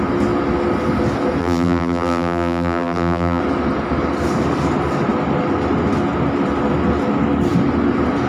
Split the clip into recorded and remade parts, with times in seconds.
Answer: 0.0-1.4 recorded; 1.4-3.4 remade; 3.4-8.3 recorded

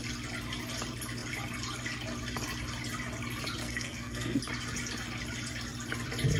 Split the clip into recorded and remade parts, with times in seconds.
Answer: 0.0-3.6 recorded; 3.6-4.4 remade; 4.4-6.4 recorded

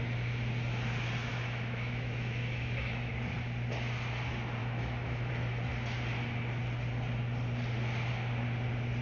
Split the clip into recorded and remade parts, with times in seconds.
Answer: 0.0-1.3 recorded; 1.3-3.1 remade; 3.1-4.6 recorded; 4.6-5.3 remade; 5.3-9.0 recorded